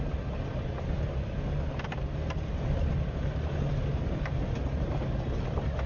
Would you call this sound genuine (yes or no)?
yes